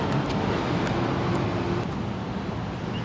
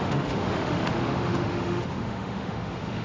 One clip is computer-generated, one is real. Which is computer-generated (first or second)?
second